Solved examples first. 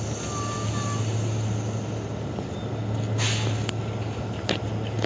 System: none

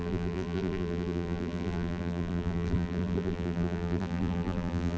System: vocoder, BigVGAN v2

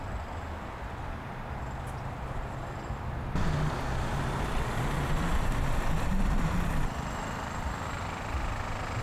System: none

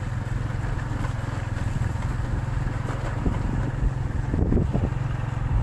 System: none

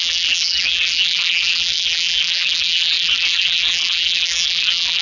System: vocoder, BigVGAN v2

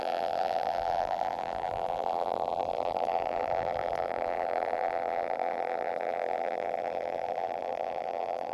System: vocoder, BigVGAN v2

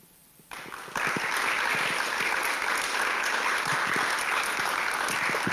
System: none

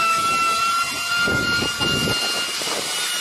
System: none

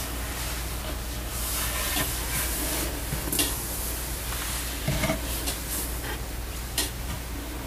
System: none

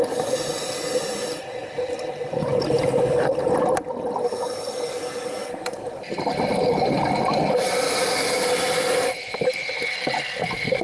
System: none